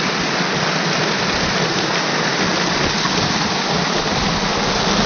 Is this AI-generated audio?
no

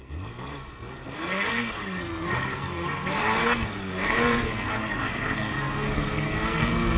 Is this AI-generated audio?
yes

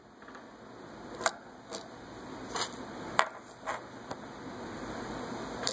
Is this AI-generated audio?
no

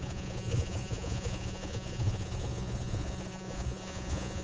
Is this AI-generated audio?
yes